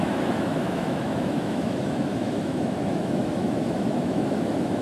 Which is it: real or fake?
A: fake